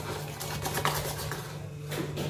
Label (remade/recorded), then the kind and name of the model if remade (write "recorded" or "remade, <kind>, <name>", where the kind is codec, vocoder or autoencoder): recorded